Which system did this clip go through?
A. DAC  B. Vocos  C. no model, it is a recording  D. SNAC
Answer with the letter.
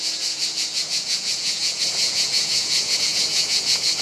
B